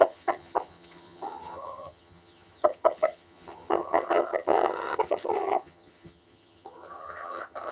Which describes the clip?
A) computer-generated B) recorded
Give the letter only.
A